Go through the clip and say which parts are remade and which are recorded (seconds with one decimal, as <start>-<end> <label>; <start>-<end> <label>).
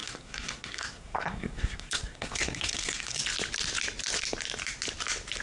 0.0-3.2 remade; 3.2-5.4 recorded